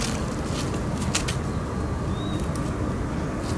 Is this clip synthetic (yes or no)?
no